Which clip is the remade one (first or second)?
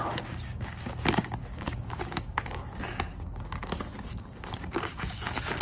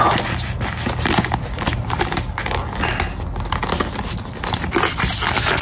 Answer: first